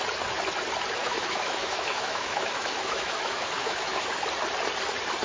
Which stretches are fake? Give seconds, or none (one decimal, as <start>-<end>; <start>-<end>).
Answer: 1.0-4.1